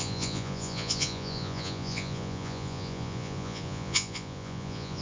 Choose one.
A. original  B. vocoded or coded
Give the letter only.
B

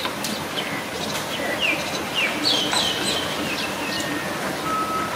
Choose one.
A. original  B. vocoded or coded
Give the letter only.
A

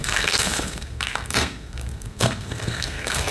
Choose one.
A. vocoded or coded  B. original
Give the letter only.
A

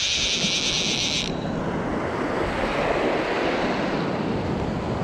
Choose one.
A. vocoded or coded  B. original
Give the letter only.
B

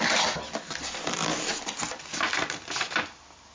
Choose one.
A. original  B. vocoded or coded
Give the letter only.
A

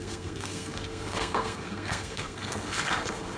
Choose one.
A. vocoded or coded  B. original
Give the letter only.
A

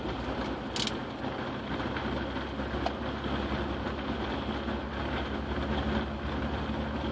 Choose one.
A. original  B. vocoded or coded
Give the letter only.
A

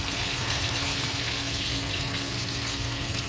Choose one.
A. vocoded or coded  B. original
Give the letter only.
A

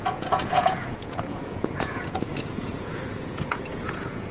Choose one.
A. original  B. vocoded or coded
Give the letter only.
B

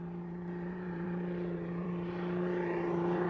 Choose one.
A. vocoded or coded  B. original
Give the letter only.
A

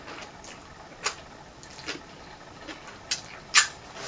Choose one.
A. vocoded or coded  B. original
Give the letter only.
B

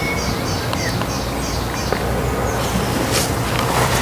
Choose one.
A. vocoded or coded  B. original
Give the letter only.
B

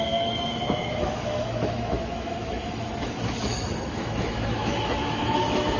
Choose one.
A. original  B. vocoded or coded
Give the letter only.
B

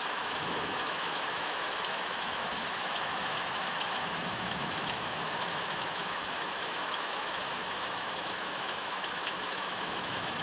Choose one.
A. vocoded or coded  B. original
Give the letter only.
A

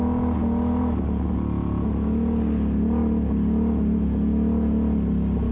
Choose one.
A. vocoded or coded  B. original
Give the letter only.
B